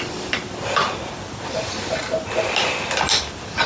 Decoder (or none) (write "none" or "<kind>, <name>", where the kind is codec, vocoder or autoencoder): none